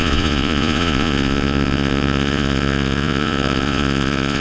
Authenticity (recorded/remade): remade